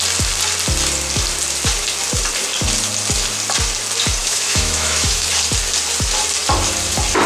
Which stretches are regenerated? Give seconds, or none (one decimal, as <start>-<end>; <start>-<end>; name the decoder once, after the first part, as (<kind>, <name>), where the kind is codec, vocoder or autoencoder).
4.2-5.3 (autoencoder, DAC-VAE)